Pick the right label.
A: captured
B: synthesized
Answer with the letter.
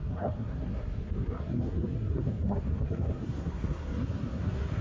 B